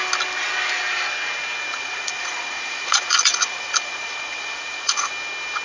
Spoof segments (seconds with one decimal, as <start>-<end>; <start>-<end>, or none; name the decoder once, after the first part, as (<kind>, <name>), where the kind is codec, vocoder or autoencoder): 1.7-5.1 (vocoder, Vocos)

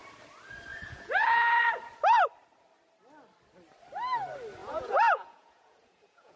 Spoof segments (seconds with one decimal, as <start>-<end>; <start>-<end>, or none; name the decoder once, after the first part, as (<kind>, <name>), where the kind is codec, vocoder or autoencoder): 0.7-1.6 (vocoder, Vocos); 4.6-6.4

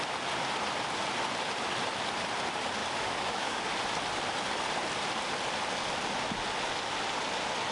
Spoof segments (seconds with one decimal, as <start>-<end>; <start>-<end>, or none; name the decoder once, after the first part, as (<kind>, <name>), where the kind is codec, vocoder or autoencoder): 2.8-3.6 (codec, DAC)

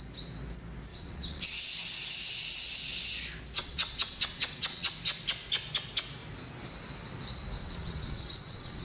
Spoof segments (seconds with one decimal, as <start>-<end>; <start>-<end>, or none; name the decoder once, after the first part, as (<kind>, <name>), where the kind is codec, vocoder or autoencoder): 0.9-1.7 (vocoder, WaveNeXt); 3.6-4.9; 7.6-8.8

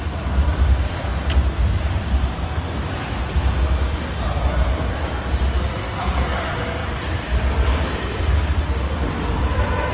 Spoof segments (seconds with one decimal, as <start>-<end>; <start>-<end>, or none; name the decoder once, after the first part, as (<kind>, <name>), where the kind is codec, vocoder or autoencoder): 0.0-1.1 (vocoder, BigVGAN v2); 4.9-9.9

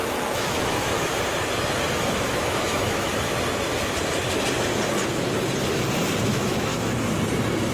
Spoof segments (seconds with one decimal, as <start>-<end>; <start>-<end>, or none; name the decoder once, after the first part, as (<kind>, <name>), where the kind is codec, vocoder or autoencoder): 0.0-1.1 (autoencoder, DAC-VAE); 2.0-3.1; 6.3-6.7

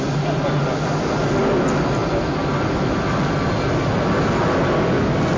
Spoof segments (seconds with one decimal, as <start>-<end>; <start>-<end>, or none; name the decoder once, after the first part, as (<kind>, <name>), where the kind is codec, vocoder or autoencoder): none

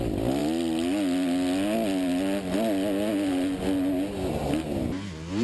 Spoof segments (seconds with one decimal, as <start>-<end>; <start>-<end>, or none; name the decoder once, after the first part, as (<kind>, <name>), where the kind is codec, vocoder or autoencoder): none